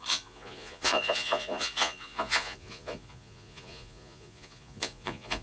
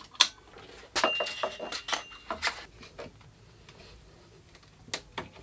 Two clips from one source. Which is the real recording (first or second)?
second